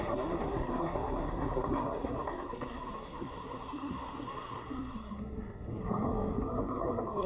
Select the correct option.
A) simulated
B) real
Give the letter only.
A